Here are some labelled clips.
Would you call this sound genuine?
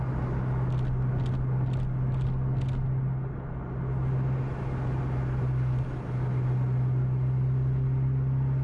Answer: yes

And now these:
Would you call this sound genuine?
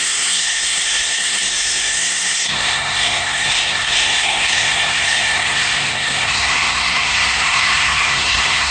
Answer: no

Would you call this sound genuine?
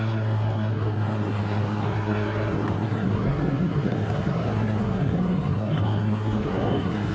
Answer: no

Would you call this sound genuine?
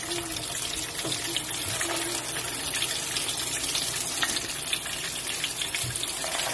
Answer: yes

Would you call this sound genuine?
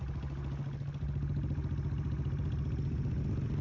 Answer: yes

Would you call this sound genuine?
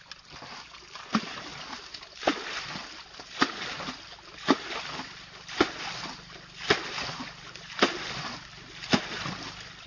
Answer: yes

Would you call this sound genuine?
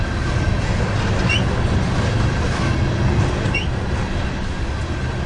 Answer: yes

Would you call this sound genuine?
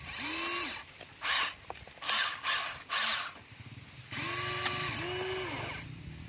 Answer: yes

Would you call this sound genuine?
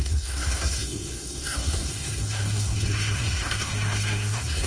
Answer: no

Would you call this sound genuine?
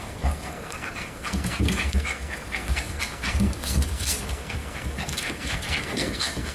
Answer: no